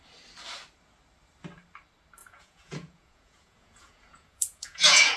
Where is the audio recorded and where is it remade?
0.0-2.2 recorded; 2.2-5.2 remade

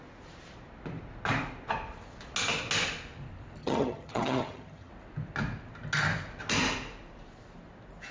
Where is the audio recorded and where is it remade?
0.0-3.6 recorded; 3.6-4.9 remade; 4.9-8.1 recorded

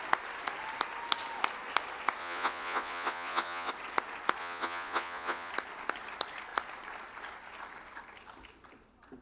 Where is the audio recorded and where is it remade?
0.0-2.2 recorded; 2.2-3.7 remade; 3.7-4.4 recorded; 4.4-5.5 remade; 5.5-9.2 recorded

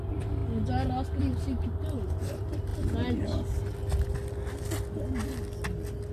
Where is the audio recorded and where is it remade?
0.0-0.4 remade; 0.4-1.2 recorded; 1.2-2.7 remade; 2.7-6.1 recorded